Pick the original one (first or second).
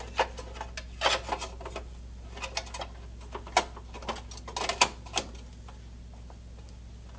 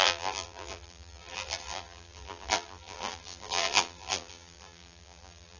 first